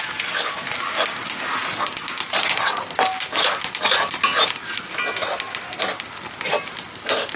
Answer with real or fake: real